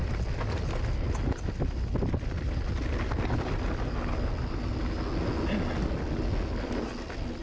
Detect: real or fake real